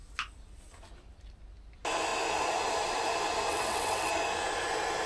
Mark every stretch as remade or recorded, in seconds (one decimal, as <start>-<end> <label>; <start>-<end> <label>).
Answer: 0.0-3.5 recorded; 3.5-4.1 remade; 4.1-5.1 recorded